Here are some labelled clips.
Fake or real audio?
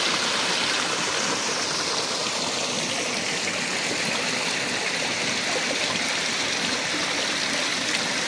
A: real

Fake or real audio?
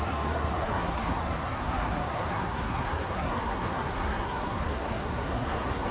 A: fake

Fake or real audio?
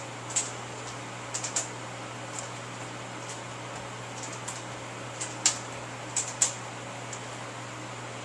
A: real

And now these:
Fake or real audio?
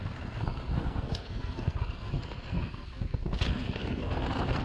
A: fake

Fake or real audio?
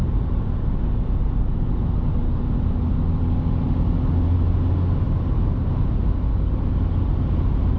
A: real